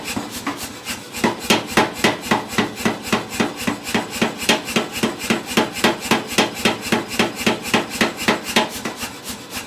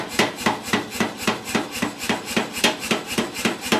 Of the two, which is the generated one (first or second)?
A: second